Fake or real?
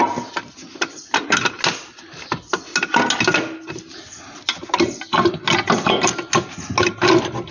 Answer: real